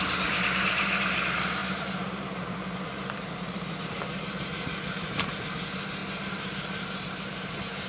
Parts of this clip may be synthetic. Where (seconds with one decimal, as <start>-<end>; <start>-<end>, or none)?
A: 0.0-7.9